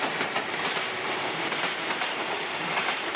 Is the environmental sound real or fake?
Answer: fake